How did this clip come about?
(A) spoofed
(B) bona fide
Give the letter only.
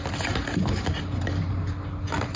B